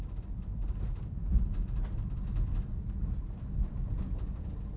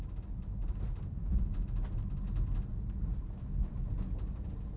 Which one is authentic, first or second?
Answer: second